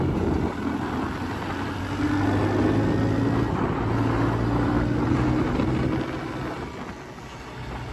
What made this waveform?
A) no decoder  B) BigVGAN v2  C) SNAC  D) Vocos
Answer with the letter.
A